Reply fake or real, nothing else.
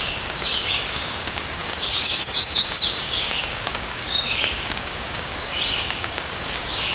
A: fake